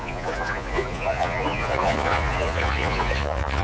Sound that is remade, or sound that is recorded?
remade